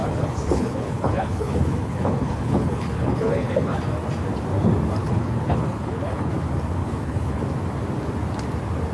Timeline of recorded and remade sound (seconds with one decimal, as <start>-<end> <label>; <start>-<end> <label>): 0.0-3.8 remade; 3.8-5.0 recorded; 5.0-6.3 remade; 6.3-6.8 recorded; 6.8-7.4 remade; 7.4-8.9 recorded